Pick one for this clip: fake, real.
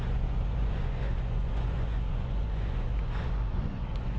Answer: fake